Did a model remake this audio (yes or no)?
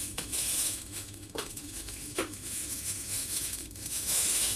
yes